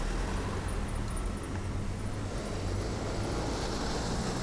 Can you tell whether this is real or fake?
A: real